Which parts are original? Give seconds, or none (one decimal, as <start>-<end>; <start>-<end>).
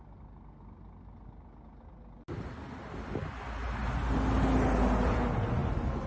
0.0-6.1